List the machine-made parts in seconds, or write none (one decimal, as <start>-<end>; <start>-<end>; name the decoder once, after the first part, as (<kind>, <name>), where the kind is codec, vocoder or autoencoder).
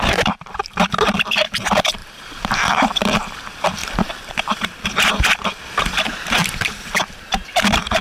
0.0-3.8 (vocoder, BigVGAN v2); 4.3-8.0